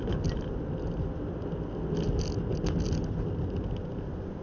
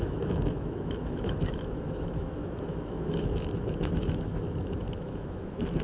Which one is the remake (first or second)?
second